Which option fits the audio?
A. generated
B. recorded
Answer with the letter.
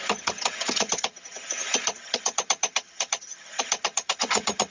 A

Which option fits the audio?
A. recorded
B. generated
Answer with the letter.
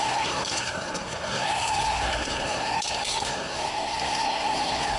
B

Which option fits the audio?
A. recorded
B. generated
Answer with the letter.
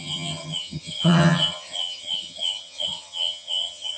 B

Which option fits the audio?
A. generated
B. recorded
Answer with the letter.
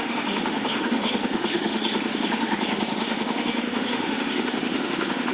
A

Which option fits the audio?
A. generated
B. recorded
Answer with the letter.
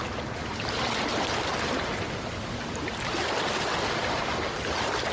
B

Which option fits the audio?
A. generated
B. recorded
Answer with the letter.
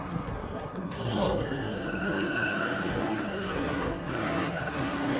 A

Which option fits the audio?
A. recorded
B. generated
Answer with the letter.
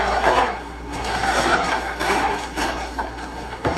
B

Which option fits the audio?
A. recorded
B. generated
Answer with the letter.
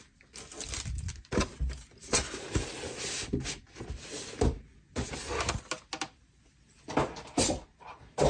A